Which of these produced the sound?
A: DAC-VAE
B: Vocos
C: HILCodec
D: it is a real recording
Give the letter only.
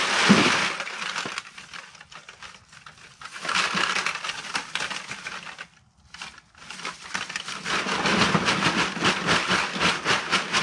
D